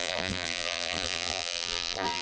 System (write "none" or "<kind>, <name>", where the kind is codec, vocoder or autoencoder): vocoder, BigVGAN v2